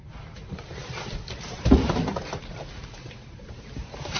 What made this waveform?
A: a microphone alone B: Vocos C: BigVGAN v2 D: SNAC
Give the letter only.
C